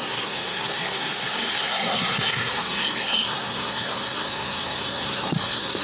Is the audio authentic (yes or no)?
no